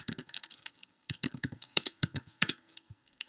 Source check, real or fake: fake